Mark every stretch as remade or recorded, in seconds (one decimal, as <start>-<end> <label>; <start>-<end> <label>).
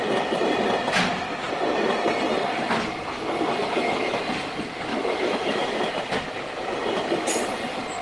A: 0.0-3.6 recorded; 3.6-4.2 remade; 4.2-4.9 recorded; 4.9-5.9 remade; 5.9-8.0 recorded